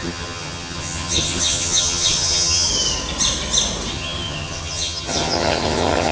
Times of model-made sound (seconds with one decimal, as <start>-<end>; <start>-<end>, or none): 0.0-2.7; 3.9-6.1